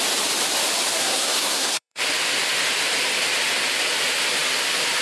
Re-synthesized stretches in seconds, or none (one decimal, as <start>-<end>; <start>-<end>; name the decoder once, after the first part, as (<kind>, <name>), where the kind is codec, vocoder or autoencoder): 1.0-2.0 (codec, SNAC)